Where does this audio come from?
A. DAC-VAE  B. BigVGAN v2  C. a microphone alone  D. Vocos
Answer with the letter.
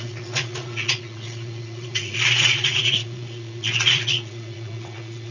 D